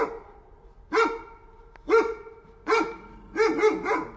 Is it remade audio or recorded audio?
recorded